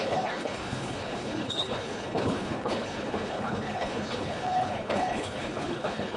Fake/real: fake